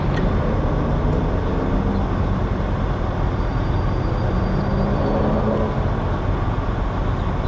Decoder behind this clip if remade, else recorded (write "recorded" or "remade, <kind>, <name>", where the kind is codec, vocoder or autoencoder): recorded